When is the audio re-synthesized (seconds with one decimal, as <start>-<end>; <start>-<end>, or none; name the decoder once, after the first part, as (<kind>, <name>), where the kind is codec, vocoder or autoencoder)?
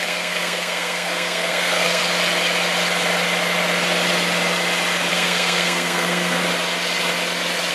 0.0-2.0 (codec, SNAC); 5.1-6.4